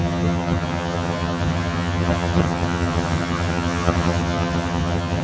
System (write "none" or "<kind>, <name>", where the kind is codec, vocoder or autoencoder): vocoder, HiFi-GAN